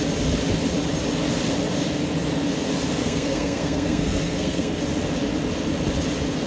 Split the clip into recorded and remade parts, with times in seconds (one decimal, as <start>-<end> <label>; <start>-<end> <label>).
0.0-3.0 recorded; 3.0-4.8 remade; 4.8-6.5 recorded